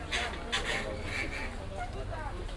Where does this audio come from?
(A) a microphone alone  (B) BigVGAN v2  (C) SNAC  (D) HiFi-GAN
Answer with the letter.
A